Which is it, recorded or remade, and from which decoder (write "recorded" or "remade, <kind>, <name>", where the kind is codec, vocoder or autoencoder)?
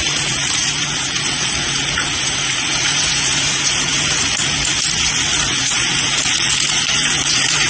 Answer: remade, vocoder, Vocos